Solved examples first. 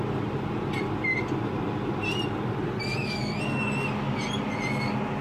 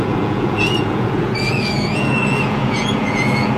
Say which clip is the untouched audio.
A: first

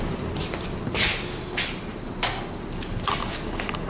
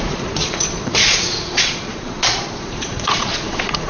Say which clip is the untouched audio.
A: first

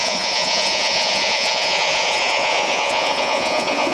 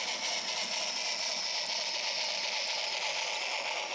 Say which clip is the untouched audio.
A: second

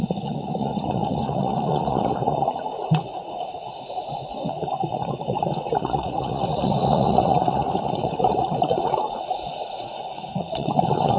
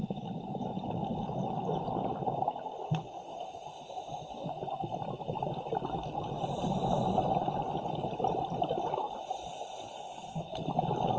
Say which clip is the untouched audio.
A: second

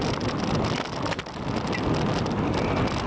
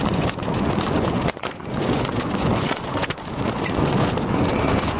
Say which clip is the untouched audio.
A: first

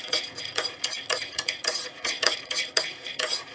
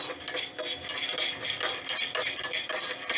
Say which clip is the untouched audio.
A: second